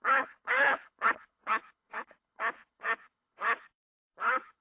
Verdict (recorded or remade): remade